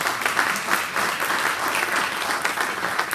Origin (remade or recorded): recorded